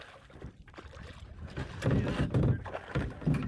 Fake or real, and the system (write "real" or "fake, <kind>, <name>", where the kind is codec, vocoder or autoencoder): real